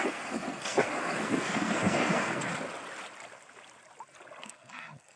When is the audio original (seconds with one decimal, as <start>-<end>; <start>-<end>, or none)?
2.5-4.4